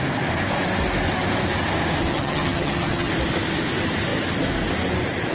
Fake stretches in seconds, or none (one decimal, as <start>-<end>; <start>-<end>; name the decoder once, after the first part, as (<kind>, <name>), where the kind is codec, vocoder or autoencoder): 2.1-3.1 (vocoder, HiFi-GAN)